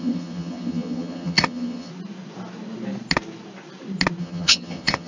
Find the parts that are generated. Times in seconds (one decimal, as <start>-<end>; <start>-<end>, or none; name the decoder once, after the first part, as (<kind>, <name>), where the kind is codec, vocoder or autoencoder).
0.0-1.9 (vocoder, HiFi-GAN); 4.2-5.1